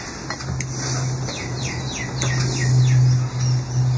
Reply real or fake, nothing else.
real